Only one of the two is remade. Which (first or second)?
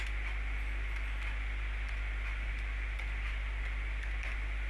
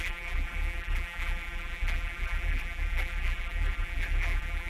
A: second